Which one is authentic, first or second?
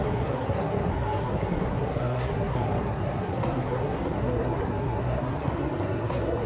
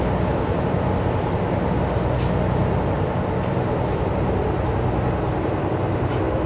second